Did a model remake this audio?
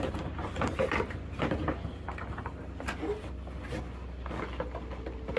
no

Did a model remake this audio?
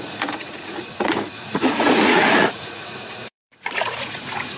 yes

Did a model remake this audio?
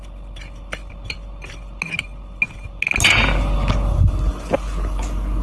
no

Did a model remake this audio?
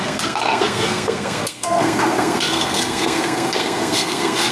yes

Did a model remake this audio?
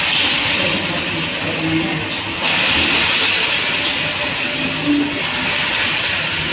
no